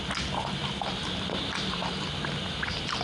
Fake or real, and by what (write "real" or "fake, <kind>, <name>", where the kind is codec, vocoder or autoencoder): real